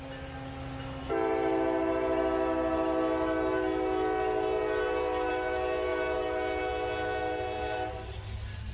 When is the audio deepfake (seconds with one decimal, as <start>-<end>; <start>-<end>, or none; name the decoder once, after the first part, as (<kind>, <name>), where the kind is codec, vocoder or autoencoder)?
none